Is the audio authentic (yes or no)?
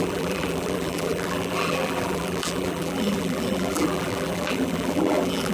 no